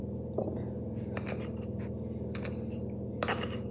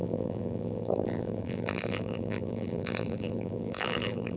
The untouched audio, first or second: first